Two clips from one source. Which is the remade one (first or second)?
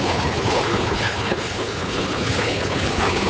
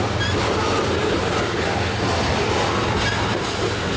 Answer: first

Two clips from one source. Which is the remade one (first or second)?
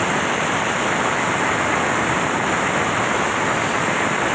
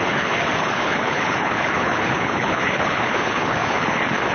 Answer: second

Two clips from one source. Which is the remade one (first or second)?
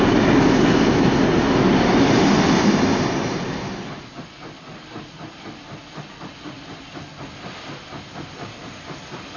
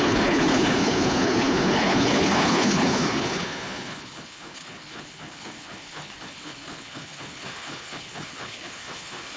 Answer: second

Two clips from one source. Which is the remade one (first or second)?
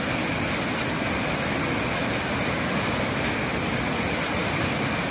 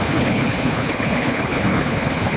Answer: second